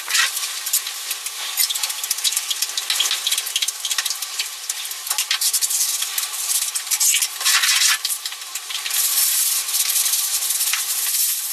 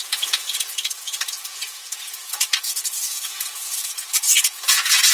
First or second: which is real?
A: first